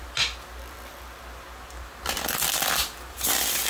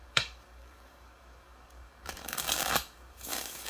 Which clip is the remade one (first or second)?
second